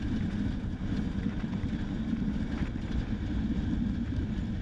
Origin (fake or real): fake